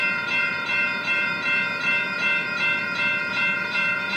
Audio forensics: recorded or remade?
remade